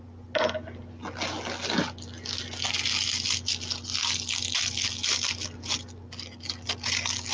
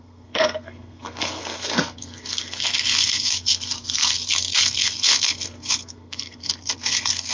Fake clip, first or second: second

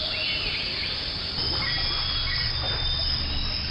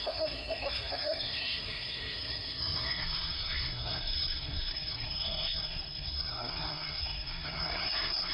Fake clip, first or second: second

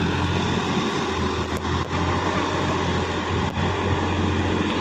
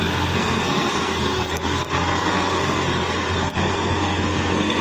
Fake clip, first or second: second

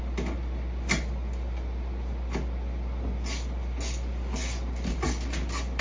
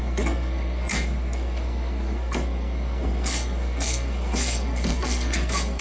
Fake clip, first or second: second